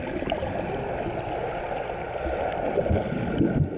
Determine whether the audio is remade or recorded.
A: recorded